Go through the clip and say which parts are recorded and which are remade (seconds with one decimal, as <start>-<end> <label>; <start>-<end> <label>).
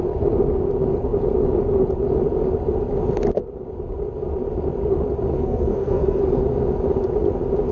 0.0-5.4 recorded; 5.4-6.2 remade; 6.2-7.7 recorded